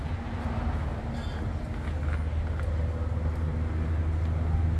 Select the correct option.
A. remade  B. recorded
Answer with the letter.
B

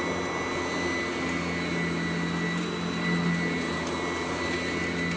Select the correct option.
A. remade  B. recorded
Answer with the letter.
B